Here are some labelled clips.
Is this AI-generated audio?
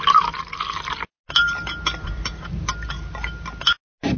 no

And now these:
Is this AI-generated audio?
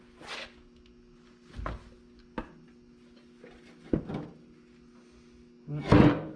no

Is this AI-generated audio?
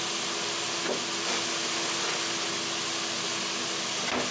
no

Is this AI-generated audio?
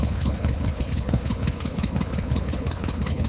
yes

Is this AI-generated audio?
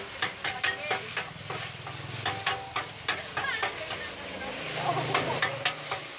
no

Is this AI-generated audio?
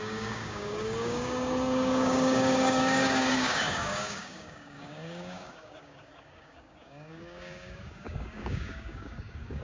yes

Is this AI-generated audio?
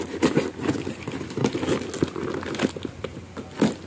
no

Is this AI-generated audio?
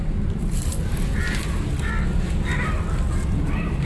no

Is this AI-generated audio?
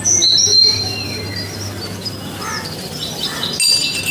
no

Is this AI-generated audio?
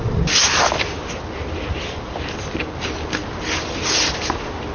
no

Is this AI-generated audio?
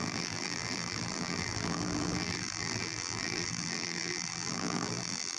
yes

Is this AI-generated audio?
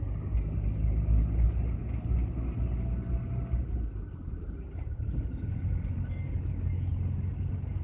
no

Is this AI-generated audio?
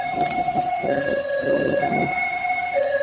yes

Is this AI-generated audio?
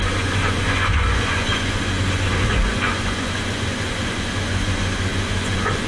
yes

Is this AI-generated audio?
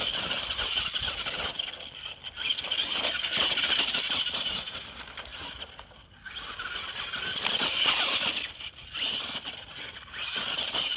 no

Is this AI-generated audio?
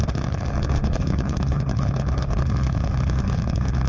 yes